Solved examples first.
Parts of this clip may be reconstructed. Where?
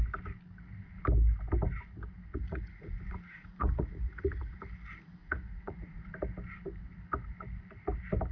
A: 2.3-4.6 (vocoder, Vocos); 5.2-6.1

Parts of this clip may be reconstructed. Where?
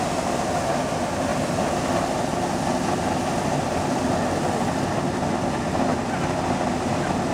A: none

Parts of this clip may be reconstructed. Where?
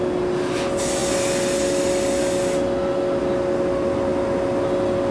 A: none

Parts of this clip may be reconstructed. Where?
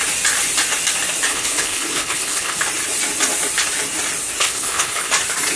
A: 1.3-2.6 (codec, HILCodec); 4.4-5.1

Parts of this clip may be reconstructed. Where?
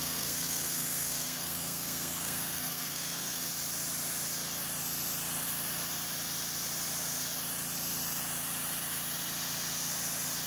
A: 0.0-3.5 (codec, SNAC)